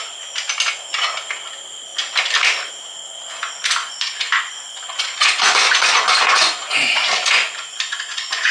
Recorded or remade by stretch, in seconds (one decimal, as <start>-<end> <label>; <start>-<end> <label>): 0.0-3.8 recorded; 3.8-8.5 remade